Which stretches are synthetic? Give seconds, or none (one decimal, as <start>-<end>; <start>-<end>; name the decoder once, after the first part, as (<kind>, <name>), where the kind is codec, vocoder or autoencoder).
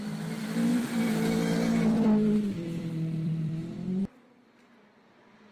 0.7-4.0 (vocoder, BigVGAN v2)